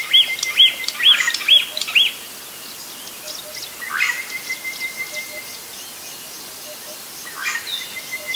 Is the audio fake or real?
real